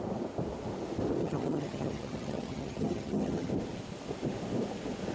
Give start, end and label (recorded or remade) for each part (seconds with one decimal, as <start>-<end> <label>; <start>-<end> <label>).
0.0-1.2 recorded; 1.2-3.5 remade; 3.5-5.1 recorded